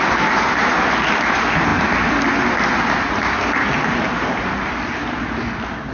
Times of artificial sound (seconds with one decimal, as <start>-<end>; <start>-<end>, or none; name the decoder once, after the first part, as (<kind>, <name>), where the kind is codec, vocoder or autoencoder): none